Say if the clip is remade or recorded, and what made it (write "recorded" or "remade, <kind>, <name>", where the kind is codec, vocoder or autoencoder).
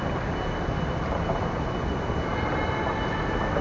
recorded